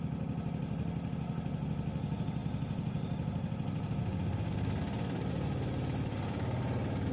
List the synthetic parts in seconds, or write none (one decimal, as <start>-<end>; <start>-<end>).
none